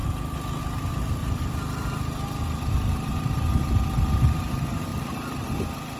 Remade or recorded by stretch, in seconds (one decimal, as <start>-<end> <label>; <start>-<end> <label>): 0.0-1.2 recorded; 1.2-3.1 remade; 3.1-4.9 recorded; 4.9-5.5 remade; 5.5-6.0 recorded